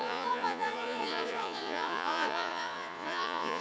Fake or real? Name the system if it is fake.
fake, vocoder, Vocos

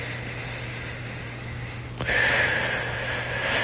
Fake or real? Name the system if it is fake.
real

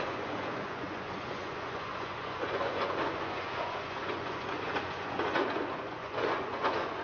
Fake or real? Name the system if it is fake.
fake, vocoder, Vocos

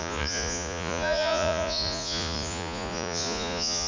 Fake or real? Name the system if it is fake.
fake, vocoder, Vocos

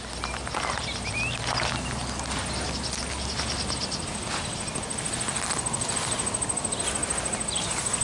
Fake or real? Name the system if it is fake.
real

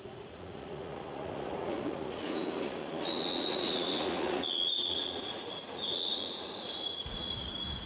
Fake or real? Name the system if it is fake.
fake, vocoder, Vocos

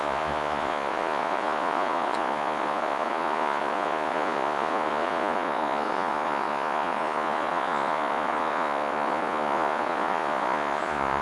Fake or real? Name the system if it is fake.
fake, vocoder, Vocos